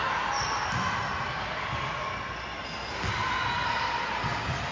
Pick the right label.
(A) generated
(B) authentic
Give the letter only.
B